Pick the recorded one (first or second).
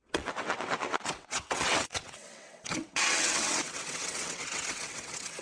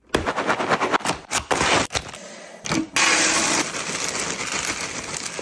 second